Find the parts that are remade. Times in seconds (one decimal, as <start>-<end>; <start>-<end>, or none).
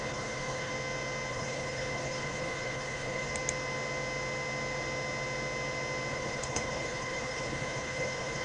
0.0-0.7; 1.3-3.3; 6.1-8.4